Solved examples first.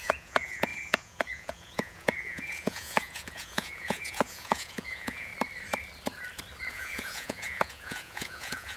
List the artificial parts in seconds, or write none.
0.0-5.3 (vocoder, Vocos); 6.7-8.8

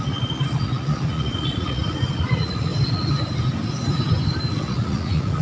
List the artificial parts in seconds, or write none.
0.0-2.7 (vocoder, Vocos); 4.6-5.4